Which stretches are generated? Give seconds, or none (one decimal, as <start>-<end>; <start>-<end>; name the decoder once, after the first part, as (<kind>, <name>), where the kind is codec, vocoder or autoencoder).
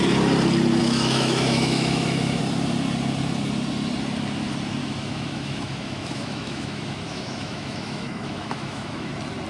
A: 0.8-2.4 (autoencoder, DAC-VAE); 4.8-9.1